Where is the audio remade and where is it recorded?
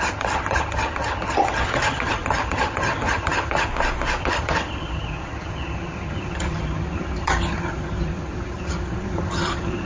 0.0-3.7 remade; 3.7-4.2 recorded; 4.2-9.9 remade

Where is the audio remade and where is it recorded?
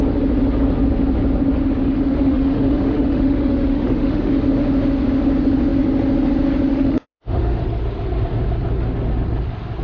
0.0-1.8 recorded; 1.8-4.3 remade; 4.3-6.7 recorded; 6.7-7.6 remade; 7.6-9.8 recorded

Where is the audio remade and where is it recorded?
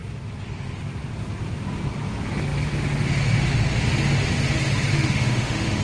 0.0-4.9 recorded; 4.9-5.8 remade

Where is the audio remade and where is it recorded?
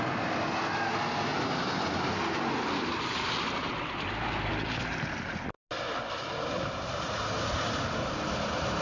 0.0-8.8 recorded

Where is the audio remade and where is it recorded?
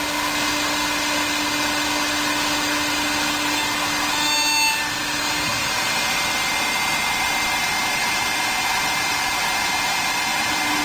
0.0-10.8 recorded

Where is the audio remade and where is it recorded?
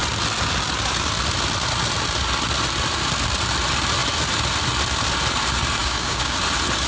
0.0-5.8 recorded; 5.8-6.4 remade; 6.4-6.9 recorded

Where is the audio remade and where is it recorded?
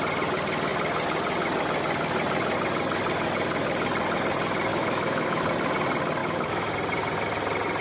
0.0-4.7 recorded; 4.7-5.4 remade; 5.4-6.2 recorded; 6.2-6.7 remade; 6.7-7.8 recorded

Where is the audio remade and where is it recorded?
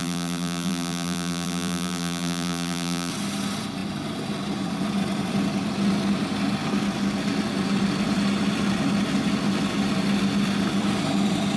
0.0-3.1 remade; 3.1-11.6 recorded